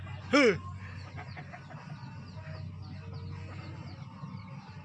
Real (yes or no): yes